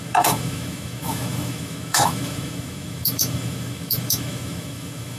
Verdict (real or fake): fake